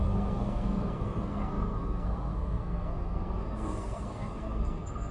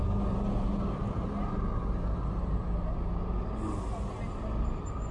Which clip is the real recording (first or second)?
second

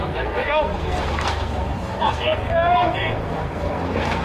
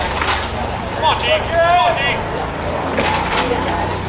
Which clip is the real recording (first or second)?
second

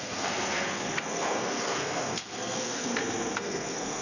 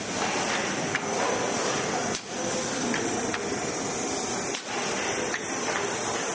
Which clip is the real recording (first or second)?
second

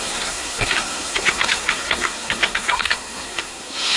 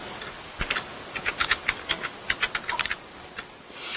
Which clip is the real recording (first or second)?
second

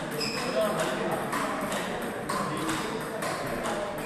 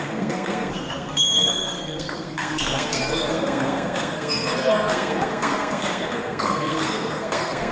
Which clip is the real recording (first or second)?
first